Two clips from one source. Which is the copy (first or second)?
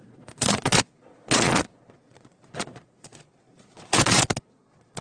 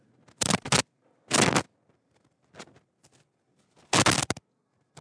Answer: first